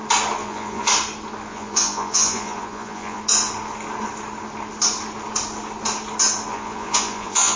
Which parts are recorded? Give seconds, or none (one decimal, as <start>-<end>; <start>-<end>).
0.0-0.4; 0.9-1.5; 3.2-6.5